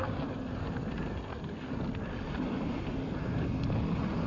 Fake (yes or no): no